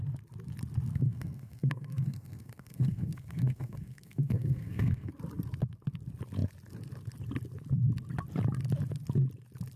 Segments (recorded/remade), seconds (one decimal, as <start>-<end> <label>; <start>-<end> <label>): 0.0-0.9 recorded; 0.9-5.1 remade; 5.1-9.8 recorded